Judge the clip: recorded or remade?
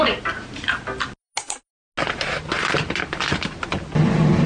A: recorded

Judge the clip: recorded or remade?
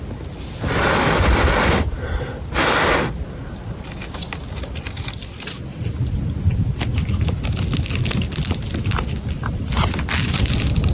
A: recorded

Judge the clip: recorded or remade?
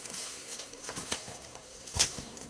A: remade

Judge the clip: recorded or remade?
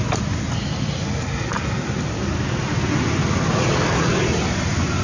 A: recorded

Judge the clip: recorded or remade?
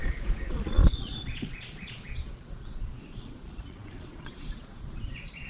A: remade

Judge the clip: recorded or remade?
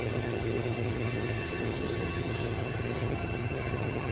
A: remade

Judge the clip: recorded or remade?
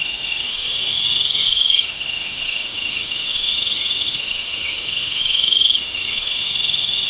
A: remade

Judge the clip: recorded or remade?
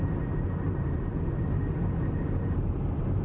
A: recorded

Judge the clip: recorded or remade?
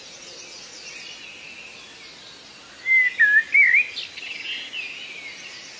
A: recorded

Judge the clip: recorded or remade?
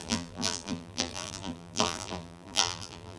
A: remade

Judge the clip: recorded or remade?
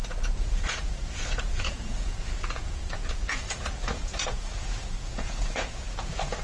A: remade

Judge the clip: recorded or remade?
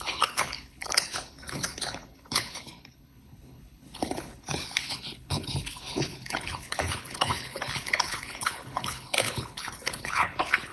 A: remade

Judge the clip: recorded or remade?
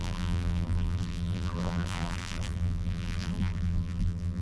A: remade